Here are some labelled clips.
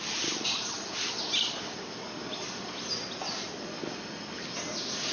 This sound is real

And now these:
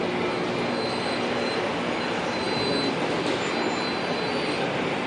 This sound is real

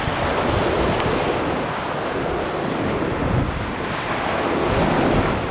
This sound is real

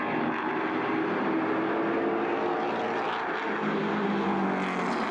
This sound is real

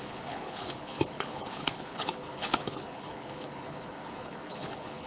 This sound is fake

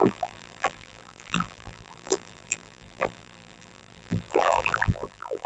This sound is fake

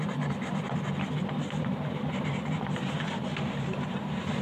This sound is fake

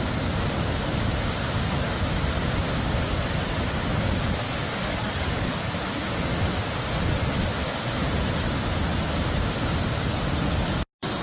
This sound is real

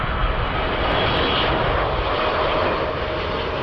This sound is real